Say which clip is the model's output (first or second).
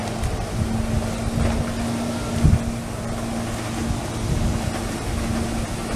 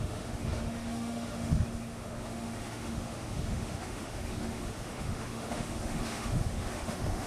second